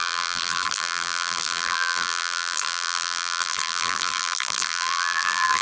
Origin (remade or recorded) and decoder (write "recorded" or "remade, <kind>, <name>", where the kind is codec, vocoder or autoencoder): remade, vocoder, BigVGAN v2